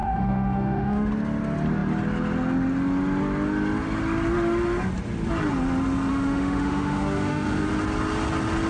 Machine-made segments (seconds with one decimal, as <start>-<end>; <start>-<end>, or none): 0.0-1.1; 6.1-7.7

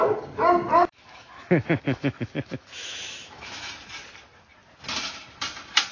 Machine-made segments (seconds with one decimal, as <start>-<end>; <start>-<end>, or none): 0.8-3.7